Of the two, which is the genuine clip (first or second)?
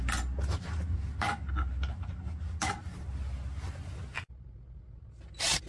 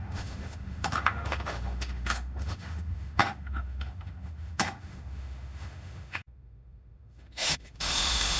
first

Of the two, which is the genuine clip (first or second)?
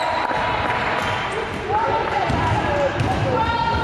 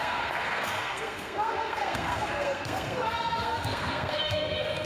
first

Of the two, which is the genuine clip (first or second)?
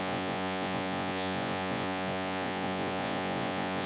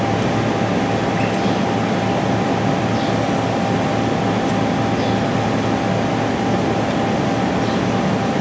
second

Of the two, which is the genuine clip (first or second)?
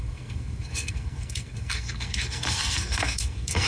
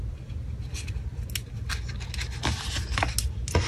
second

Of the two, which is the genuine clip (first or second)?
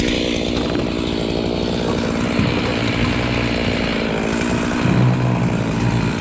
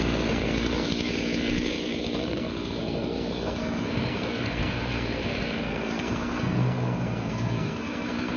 first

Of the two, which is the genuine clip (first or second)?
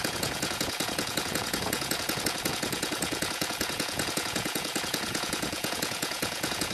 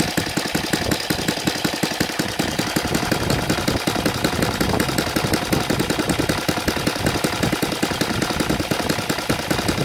second